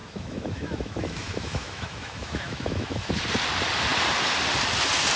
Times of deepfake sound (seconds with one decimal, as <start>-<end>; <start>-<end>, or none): 0.0-3.1